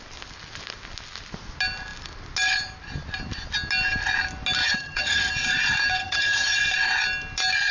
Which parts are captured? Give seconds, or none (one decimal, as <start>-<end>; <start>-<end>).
0.0-4.6; 5.3-6.0; 6.6-7.7